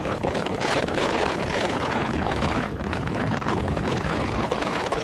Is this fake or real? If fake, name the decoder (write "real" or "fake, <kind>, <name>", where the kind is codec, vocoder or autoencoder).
fake, codec, HILCodec